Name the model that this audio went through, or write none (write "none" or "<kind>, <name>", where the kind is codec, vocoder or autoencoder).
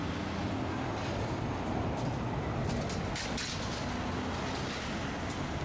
none